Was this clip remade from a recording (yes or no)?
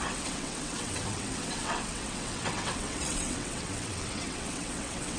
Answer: yes